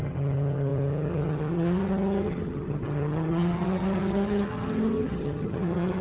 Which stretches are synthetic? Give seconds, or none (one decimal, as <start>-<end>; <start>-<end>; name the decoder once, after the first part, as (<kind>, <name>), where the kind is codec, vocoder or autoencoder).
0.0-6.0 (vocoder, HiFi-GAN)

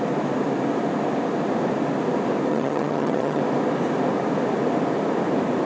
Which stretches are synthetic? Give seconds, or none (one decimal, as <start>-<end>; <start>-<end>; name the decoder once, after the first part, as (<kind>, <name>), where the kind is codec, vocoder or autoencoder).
2.5-3.4 (vocoder, HiFi-GAN)

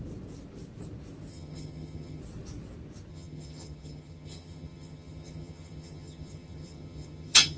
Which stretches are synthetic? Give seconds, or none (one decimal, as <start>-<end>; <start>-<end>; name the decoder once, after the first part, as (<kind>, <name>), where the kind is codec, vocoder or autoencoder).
1.3-2.2 (vocoder, HiFi-GAN); 3.1-7.6

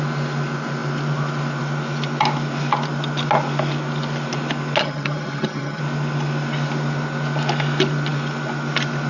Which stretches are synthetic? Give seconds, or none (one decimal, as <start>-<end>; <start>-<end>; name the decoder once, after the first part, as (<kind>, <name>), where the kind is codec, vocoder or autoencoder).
4.8-5.8 (vocoder, HiFi-GAN)

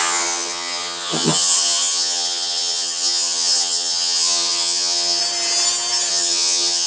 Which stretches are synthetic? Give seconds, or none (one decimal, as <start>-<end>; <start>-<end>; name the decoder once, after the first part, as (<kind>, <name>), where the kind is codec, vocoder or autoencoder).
0.0-5.2 (vocoder, HiFi-GAN); 6.1-6.9

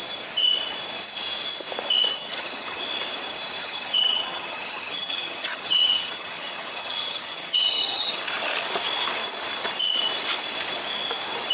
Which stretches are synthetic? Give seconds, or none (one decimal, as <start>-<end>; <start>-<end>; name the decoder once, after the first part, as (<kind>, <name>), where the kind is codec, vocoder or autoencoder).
2.2-2.8 (vocoder, HiFi-GAN); 3.6-8.3

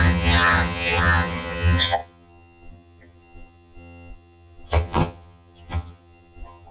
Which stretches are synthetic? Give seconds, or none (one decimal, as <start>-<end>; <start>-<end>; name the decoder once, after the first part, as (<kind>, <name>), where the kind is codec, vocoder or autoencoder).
0.0-6.7 (vocoder, HiFi-GAN)

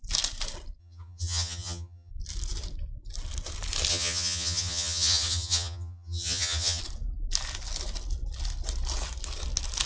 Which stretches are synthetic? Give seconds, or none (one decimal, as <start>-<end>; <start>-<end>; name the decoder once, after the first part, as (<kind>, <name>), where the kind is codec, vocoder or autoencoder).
0.8-2.1 (vocoder, HiFi-GAN); 3.9-6.8